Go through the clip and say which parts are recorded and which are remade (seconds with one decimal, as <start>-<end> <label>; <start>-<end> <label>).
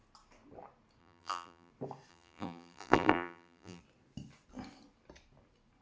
0.0-1.0 recorded; 1.0-1.7 remade; 1.7-2.1 recorded; 2.1-3.8 remade; 3.8-5.8 recorded